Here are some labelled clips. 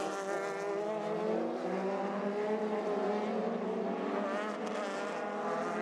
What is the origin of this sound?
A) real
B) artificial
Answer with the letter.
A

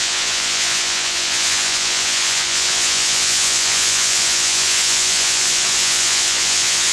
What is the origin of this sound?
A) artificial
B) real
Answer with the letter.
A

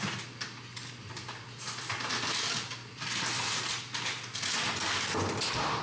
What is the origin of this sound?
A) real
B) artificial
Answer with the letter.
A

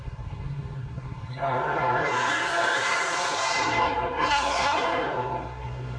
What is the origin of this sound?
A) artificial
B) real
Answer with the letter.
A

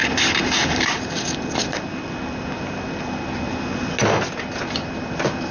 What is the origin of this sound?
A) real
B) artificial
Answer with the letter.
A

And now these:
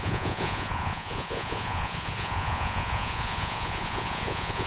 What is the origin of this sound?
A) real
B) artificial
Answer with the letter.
B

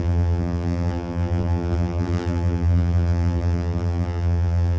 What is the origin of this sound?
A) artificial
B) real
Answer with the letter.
A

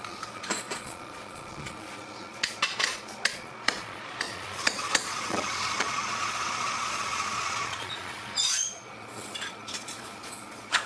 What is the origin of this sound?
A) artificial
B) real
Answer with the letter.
A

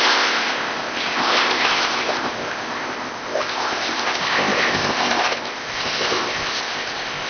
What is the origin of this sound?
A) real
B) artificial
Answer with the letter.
B